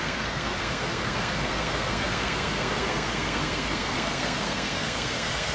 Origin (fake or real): fake